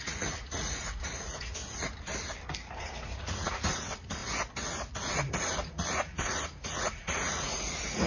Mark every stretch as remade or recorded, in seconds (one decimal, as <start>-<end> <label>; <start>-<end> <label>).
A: 0.0-1.6 remade; 1.6-2.8 recorded; 2.8-4.2 remade; 4.2-4.9 recorded; 4.9-8.1 remade